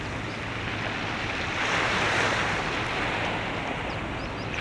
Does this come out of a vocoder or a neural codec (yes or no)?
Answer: no